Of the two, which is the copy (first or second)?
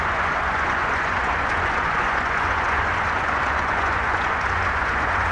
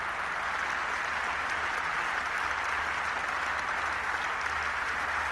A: first